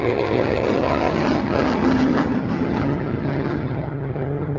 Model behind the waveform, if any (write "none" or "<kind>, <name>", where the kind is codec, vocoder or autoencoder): vocoder, HiFi-GAN